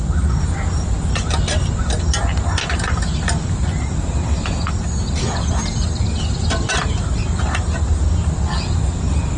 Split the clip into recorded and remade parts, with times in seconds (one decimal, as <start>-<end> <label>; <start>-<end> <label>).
0.0-9.4 recorded